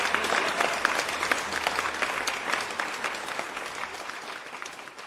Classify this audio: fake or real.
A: real